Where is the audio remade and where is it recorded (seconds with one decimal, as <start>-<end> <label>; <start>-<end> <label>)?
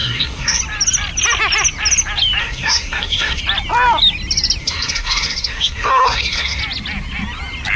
0.0-0.6 remade; 0.6-2.4 recorded; 2.4-3.4 remade; 3.4-4.6 recorded; 4.6-6.6 remade; 6.6-7.8 recorded